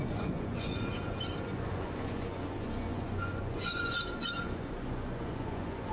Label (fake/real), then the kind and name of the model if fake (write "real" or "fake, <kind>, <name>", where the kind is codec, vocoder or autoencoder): fake, vocoder, Vocos